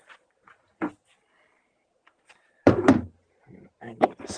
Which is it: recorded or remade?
recorded